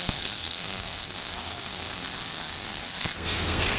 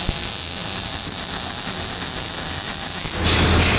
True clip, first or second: second